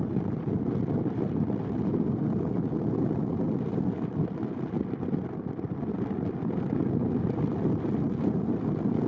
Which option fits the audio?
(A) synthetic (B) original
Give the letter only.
B